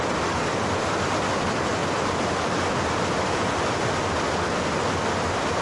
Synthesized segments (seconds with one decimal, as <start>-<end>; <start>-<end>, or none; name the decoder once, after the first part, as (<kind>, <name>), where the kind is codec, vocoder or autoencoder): none